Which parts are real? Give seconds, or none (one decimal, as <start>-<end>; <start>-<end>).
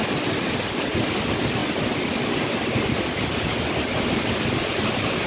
0.0-5.3